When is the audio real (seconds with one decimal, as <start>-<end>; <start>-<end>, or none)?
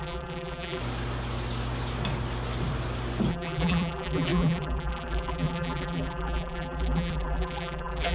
0.8-3.3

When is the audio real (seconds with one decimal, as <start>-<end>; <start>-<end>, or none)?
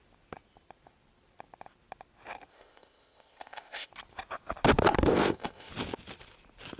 0.0-2.5; 3.9-5.1; 5.7-6.8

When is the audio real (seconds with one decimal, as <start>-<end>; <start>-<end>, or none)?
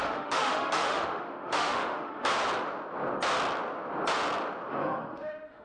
2.3-4.7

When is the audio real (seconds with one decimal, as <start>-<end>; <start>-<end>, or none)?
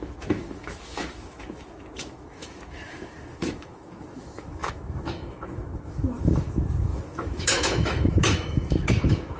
none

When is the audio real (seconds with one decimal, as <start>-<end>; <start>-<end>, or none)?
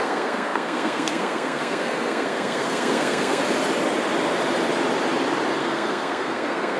3.4-5.6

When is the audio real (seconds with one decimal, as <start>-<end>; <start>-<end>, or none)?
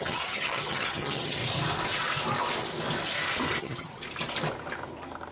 1.4-3.6; 4.0-5.3